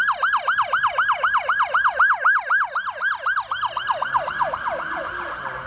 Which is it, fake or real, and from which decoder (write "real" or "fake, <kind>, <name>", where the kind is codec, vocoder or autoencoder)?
real